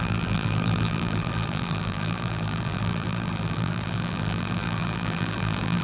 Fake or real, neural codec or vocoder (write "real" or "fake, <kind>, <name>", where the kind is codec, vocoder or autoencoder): fake, vocoder, BigVGAN v2